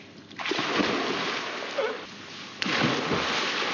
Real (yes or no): yes